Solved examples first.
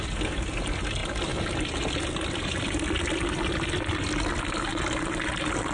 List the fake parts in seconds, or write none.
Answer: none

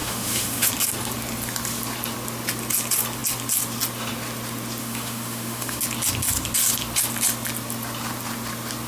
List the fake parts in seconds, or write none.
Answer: 0.0-0.7; 4.8-5.8

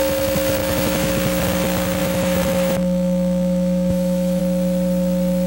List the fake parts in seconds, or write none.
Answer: 0.6-1.1; 2.0-4.4

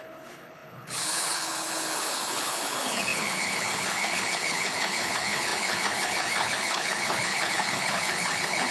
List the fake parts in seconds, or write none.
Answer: 0.0-8.7

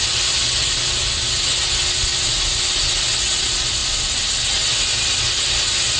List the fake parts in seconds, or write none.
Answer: 2.1-2.6

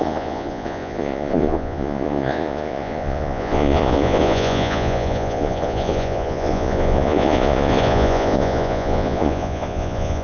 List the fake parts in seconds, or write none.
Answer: 0.0-10.2

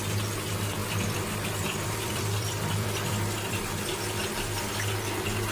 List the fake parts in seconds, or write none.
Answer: 0.8-3.8